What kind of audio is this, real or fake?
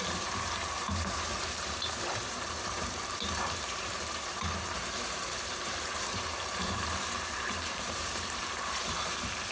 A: fake